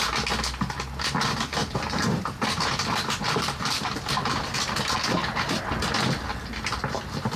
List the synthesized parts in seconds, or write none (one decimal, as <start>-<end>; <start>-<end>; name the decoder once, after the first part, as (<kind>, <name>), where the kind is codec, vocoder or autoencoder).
1.6-5.6 (vocoder, BigVGAN v2)